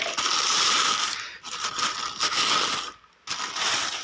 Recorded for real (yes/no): yes